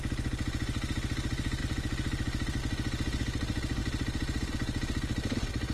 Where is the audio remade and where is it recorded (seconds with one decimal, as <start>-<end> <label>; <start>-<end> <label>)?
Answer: 0.0-1.6 recorded; 1.6-2.6 remade; 2.6-5.7 recorded